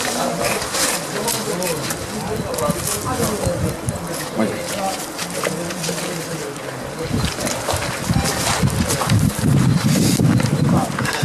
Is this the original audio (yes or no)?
yes